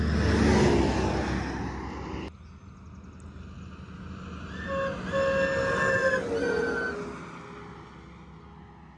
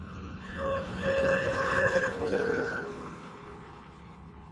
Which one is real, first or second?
first